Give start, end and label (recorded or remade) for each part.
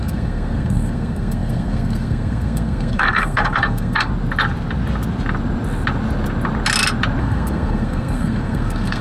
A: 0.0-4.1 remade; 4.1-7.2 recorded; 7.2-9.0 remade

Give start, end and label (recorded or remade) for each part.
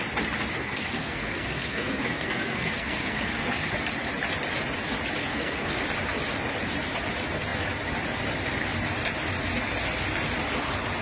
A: 0.0-0.6 recorded; 0.6-3.7 remade; 3.7-5.2 recorded; 5.2-5.8 remade; 5.8-11.0 recorded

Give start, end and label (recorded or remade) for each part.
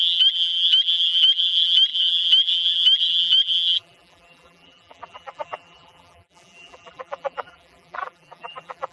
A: 0.0-8.9 remade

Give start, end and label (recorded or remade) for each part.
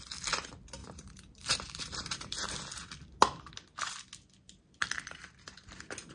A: 0.0-0.8 recorded; 0.8-2.5 remade; 2.5-6.1 recorded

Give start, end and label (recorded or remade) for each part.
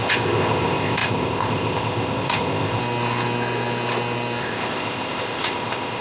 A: 0.0-2.8 remade; 2.8-4.4 recorded; 4.4-6.0 remade